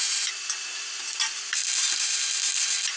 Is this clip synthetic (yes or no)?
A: no